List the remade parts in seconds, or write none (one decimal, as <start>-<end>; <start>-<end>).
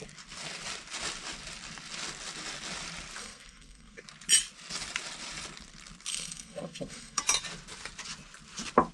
3.2-4.0; 6.1-7.2